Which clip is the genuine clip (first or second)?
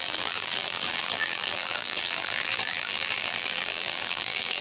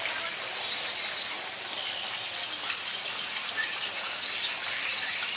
second